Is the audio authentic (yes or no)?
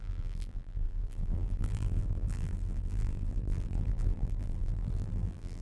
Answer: no